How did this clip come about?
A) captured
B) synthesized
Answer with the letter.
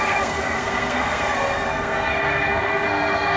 B